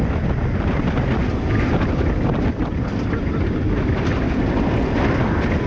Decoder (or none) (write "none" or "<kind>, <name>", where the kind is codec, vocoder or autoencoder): none